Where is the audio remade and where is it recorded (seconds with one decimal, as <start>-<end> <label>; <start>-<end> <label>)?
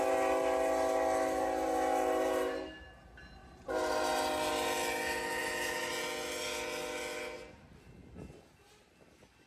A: 0.0-3.4 recorded; 3.4-4.5 remade; 4.5-5.4 recorded; 5.4-6.0 remade; 6.0-9.5 recorded